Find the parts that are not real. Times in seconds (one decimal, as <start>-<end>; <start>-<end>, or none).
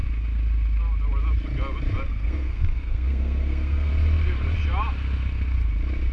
2.1-3.9